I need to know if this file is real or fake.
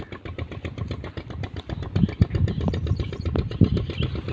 real